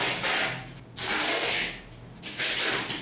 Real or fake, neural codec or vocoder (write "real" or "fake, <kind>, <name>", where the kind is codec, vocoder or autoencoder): real